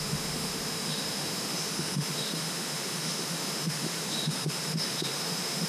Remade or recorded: remade